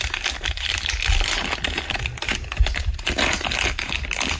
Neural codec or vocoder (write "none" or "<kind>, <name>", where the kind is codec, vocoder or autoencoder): none